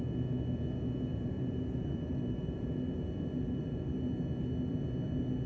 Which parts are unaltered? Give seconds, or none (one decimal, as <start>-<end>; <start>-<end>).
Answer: 0.0-1.1; 4.0-5.5